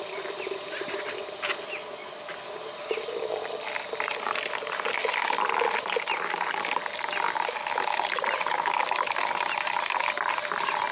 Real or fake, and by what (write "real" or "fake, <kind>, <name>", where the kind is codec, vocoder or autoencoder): real